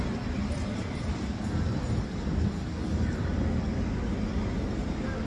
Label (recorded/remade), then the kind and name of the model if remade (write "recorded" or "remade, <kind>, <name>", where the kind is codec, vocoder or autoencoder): recorded